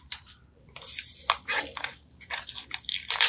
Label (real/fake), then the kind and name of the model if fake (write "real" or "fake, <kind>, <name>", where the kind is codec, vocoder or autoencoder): fake, vocoder, BigVGAN v2